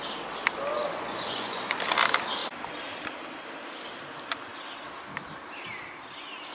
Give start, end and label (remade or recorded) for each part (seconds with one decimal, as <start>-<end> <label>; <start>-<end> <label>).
0.0-0.7 recorded; 0.7-1.8 remade; 1.8-6.5 recorded